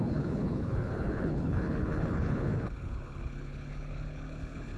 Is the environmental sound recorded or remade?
remade